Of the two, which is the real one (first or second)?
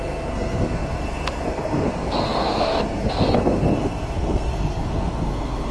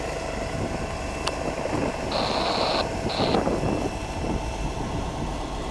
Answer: second